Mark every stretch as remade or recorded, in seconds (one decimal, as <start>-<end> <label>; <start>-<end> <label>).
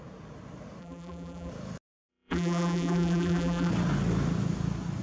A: 0.0-0.8 recorded; 0.8-1.5 remade; 1.5-2.1 recorded; 2.1-3.7 remade; 3.7-5.0 recorded